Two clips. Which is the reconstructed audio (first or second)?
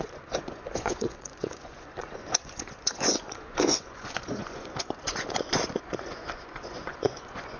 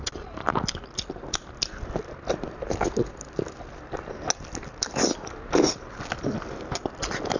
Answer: first